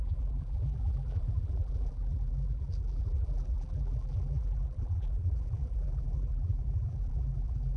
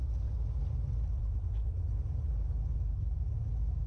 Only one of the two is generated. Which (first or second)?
first